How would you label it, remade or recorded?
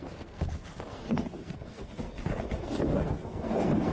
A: remade